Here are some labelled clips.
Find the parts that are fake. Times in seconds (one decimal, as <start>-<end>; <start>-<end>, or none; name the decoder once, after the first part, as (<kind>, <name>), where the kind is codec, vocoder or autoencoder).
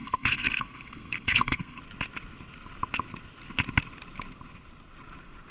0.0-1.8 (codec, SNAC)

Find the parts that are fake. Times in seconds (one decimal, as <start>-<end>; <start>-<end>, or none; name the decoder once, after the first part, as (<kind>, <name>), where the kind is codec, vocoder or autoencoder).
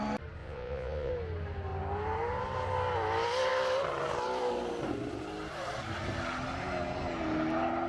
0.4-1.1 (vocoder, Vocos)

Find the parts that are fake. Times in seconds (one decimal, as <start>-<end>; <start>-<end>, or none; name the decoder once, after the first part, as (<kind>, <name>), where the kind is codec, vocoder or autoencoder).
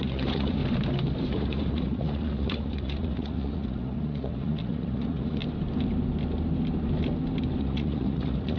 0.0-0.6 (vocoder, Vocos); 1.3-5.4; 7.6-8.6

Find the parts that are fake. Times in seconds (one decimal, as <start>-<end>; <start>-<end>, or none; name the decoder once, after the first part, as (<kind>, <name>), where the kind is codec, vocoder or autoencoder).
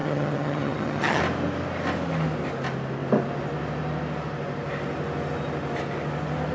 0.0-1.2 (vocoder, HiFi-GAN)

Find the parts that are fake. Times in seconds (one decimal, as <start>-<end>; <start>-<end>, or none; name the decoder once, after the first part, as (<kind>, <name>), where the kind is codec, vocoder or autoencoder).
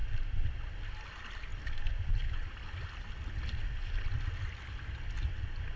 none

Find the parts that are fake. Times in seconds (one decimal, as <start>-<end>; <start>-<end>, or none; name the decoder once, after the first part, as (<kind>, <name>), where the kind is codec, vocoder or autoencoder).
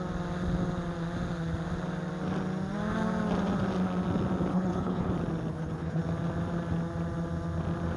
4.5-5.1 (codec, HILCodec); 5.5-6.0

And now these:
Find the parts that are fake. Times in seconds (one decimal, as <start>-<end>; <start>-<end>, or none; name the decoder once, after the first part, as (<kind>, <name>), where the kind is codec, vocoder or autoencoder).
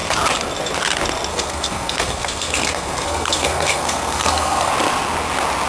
1.3-4.7 (codec, SNAC)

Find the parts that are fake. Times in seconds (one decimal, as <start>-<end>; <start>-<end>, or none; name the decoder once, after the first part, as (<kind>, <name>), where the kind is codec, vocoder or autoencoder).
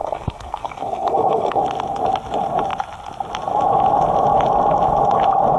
0.0-1.6 (codec, SNAC)